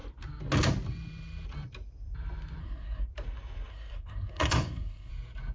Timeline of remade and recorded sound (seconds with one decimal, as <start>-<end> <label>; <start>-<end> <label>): 0.0-2.6 recorded; 2.6-3.1 remade; 3.1-3.7 recorded; 3.7-5.1 remade; 5.1-5.5 recorded